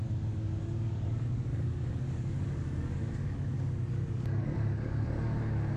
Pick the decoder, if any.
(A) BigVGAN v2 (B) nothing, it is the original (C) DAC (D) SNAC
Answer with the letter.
C